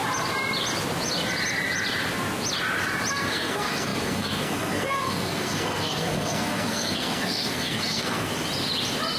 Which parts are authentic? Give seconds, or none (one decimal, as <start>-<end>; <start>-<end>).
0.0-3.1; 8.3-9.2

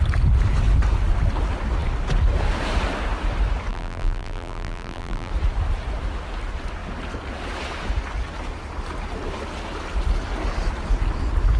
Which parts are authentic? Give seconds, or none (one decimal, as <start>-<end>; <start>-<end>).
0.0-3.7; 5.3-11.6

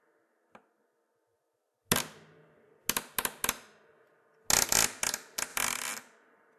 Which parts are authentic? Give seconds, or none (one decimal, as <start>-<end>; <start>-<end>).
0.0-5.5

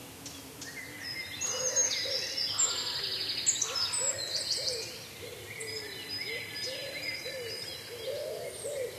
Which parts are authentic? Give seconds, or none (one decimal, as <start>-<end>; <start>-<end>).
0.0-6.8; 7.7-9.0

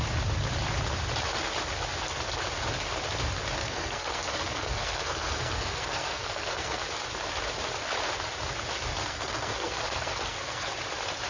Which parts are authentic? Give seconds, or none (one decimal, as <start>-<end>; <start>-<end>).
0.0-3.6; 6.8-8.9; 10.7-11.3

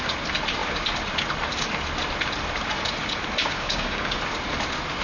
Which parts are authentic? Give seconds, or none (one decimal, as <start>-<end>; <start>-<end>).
0.0-3.4; 4.2-5.0